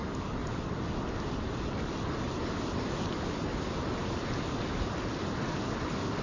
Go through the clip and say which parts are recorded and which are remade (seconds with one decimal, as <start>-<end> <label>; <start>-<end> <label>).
0.0-6.2 recorded